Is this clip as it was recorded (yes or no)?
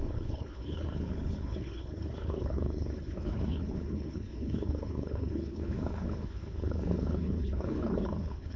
no